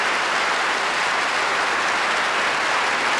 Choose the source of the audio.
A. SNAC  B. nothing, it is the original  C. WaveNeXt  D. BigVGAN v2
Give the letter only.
B